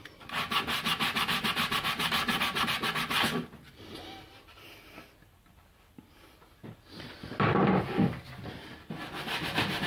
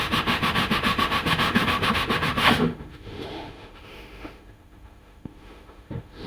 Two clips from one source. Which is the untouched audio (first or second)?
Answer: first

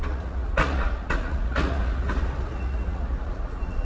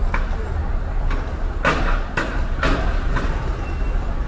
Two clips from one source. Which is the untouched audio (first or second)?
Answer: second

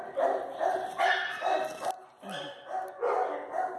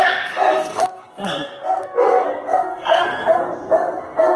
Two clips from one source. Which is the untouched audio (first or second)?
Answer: first